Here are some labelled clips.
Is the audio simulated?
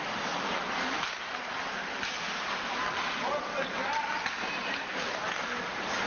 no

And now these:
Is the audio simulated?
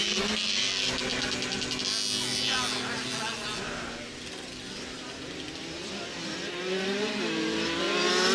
no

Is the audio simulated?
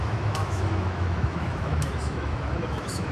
yes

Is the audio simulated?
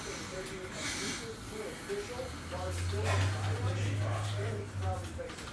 no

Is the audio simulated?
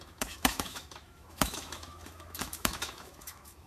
yes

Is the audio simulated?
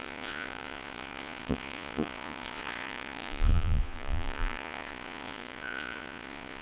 yes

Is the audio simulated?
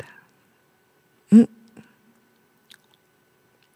no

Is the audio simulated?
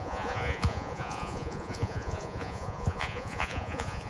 yes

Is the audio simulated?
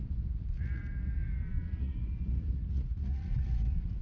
yes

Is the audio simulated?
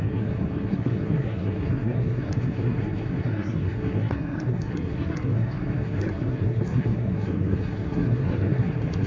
yes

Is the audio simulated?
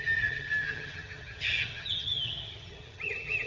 yes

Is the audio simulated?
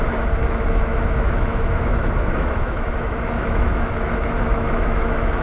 yes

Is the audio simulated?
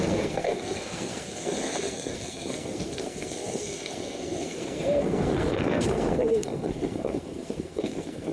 yes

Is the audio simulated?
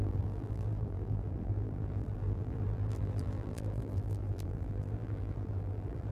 yes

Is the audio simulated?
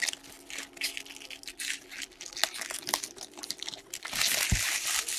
no